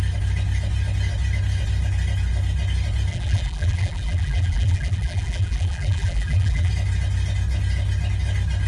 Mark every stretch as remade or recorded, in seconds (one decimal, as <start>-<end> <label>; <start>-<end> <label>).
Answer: 0.0-3.1 recorded; 3.1-6.7 remade; 6.7-8.7 recorded